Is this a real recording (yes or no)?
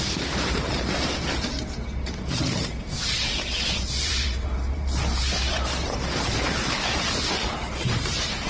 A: no